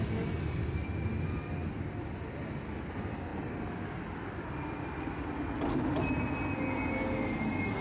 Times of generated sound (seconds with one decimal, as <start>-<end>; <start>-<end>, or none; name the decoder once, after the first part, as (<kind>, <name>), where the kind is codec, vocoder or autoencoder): none